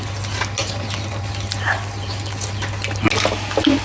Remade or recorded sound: recorded